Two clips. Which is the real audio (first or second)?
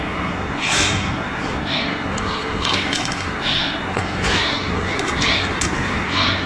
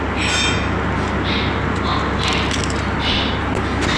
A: second